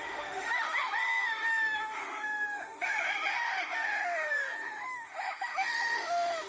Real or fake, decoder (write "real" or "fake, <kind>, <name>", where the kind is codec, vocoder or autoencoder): fake, autoencoder, DAC-VAE